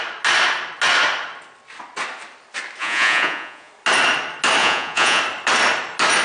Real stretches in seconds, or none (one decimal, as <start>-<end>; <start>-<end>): 0.0-2.8; 3.7-4.6; 5.2-6.2